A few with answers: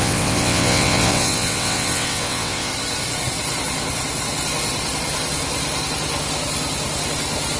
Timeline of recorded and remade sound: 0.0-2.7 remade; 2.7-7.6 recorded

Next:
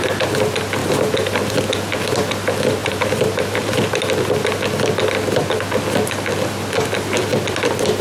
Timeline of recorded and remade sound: 0.0-0.8 recorded; 0.8-1.6 remade; 1.6-2.8 recorded; 2.8-4.0 remade; 4.0-8.0 recorded

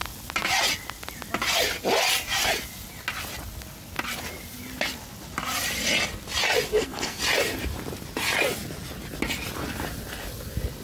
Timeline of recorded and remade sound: 0.0-6.7 recorded; 6.7-7.2 remade; 7.2-10.8 recorded

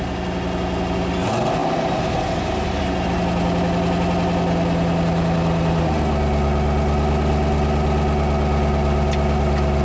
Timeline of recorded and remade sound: 0.0-9.8 recorded

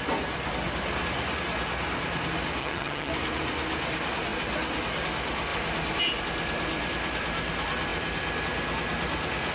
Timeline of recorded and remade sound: 0.0-2.6 recorded; 2.6-3.1 remade; 3.1-9.5 recorded

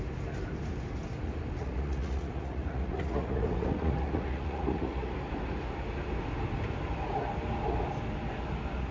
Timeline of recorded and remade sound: 0.0-1.6 recorded; 1.6-5.1 remade; 5.1-8.9 recorded

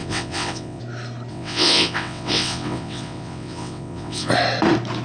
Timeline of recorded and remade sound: 0.0-0.8 remade; 0.8-1.3 recorded; 1.3-4.3 remade; 4.3-5.0 recorded